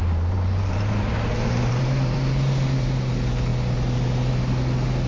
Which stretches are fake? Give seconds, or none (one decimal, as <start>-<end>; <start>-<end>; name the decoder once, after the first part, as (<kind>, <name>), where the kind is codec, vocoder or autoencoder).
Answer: 0.0-3.1 (vocoder, BigVGAN v2)

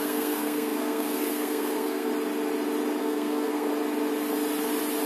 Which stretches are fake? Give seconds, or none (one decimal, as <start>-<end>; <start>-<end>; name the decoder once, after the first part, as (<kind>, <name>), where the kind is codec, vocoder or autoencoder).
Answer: 0.0-2.1 (codec, SNAC); 3.0-3.7

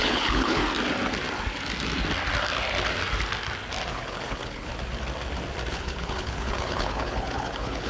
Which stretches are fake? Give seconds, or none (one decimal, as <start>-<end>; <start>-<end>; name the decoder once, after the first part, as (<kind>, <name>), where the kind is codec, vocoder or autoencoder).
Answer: 0.0-0.6 (codec, HILCodec); 3.9-4.7; 5.7-7.9